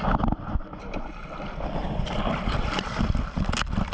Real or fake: real